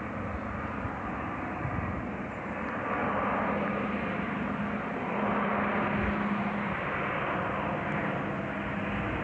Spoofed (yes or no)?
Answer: no